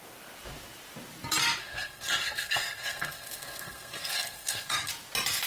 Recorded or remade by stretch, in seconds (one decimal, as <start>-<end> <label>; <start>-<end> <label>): 0.0-1.6 recorded; 1.6-4.9 remade; 4.9-5.5 recorded